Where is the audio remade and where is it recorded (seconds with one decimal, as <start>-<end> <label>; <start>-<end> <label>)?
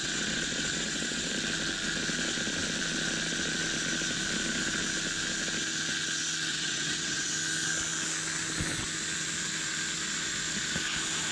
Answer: 0.0-1.3 remade; 1.3-6.5 recorded; 6.5-7.3 remade; 7.3-11.3 recorded